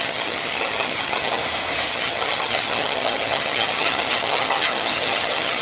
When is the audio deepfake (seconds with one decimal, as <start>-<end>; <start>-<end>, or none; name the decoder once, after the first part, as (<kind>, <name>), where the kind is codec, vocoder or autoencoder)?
0.0-1.4 (vocoder, HiFi-GAN); 1.9-5.6